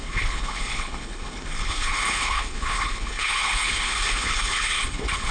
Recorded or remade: remade